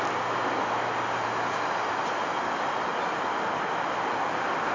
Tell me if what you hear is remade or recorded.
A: recorded